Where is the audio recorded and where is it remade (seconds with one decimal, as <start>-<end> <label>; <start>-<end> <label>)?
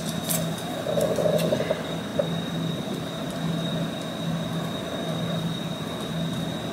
0.0-6.7 recorded